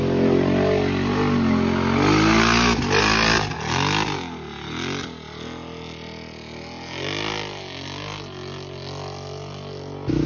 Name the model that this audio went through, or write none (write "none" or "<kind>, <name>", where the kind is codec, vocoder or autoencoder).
none